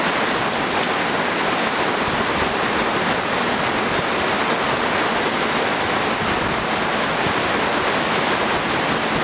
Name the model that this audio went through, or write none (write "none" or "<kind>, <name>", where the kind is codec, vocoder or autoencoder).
none